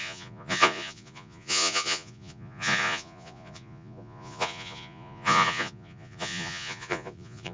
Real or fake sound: fake